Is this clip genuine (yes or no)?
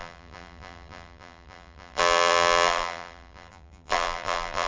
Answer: no